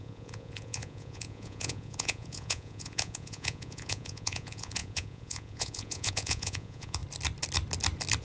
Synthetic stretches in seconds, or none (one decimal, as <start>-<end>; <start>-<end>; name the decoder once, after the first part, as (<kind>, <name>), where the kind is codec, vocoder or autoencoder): 0.0-7.0 (vocoder, Vocos)